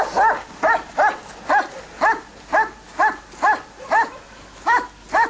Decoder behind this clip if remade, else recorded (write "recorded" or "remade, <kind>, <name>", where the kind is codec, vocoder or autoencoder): recorded